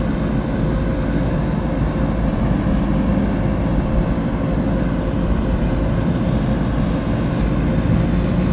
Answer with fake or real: real